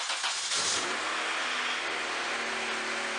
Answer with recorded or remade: recorded